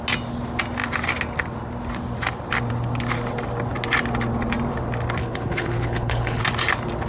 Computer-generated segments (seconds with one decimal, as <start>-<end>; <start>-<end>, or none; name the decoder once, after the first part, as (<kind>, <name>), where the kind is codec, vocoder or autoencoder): 5.2-6.4 (codec, HILCodec)